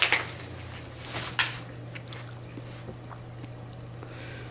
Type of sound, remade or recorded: recorded